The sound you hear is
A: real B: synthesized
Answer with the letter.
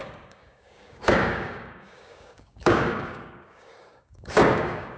B